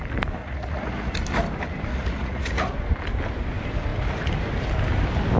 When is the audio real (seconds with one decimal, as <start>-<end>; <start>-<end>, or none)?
0.0-0.4; 1.1-1.9; 2.7-5.4

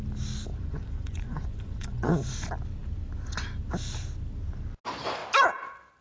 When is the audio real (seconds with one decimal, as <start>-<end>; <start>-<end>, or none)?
0.0-0.5; 2.3-6.0